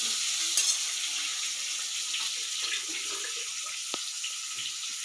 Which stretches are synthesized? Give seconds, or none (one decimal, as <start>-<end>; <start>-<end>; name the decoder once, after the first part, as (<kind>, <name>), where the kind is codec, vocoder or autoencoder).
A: none